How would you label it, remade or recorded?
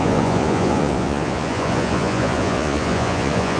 remade